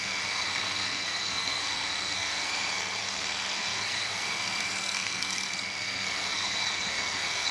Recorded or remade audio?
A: remade